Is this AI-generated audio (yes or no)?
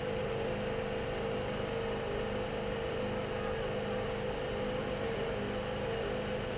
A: no